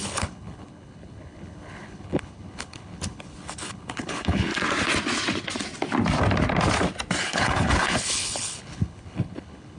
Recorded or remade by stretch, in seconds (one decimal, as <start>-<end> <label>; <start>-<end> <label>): 0.0-4.5 remade; 4.5-7.2 recorded; 7.2-9.8 remade